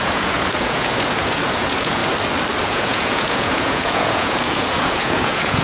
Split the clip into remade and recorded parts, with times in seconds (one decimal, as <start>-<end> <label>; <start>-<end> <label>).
0.0-2.0 remade; 2.0-2.6 recorded; 2.6-5.6 remade